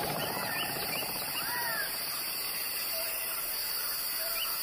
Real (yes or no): no